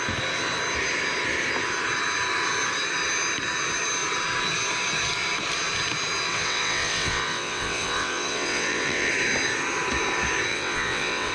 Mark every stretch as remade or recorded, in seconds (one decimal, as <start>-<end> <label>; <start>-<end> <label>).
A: 0.0-6.3 recorded; 6.3-9.1 remade; 9.1-10.5 recorded; 10.5-11.3 remade